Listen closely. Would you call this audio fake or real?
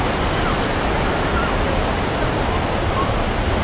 real